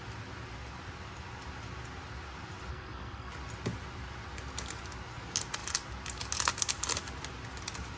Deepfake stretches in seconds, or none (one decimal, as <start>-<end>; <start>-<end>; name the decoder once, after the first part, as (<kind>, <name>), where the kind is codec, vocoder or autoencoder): 2.7-3.3 (codec, SNAC)